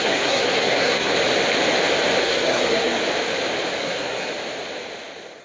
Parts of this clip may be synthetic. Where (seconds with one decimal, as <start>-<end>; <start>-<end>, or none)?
0.0-1.1; 2.2-3.0; 3.8-4.3